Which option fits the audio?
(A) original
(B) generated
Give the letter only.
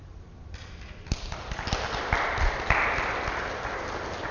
A